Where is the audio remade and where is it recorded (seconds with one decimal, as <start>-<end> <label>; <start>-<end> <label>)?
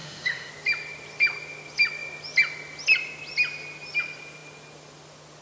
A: 0.0-0.5 remade; 0.5-5.4 recorded